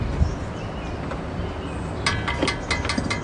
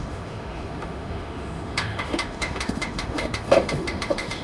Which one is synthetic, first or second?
second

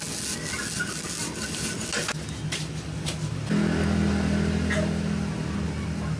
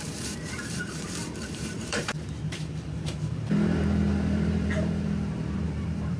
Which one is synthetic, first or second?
second